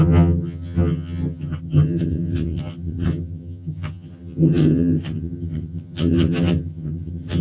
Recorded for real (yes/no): no